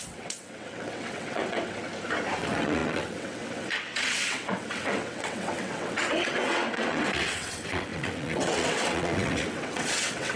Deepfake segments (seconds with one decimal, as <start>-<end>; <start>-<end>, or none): 0.0-1.8; 2.4-10.4